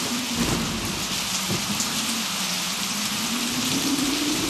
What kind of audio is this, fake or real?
real